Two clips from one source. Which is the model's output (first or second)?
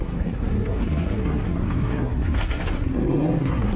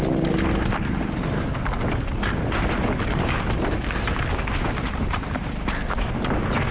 first